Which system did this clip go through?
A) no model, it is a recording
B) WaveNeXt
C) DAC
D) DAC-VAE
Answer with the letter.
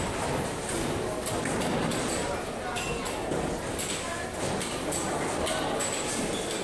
A